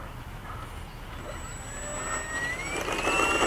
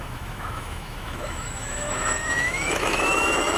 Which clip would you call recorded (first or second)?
first